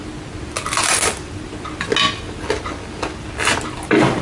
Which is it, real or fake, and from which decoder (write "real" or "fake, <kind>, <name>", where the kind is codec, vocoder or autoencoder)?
real